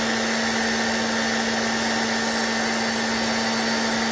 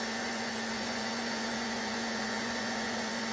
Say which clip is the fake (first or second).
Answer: second